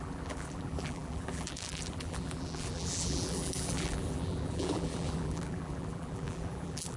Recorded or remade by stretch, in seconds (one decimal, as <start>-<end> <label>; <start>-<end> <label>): 0.0-7.0 remade

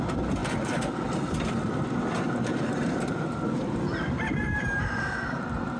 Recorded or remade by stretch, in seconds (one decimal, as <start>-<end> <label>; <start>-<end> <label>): 0.0-2.5 recorded; 2.5-3.2 remade; 3.2-4.4 recorded; 4.4-5.8 remade

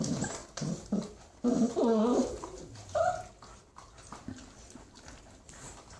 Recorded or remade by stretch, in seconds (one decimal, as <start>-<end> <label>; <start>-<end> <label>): 0.0-6.0 recorded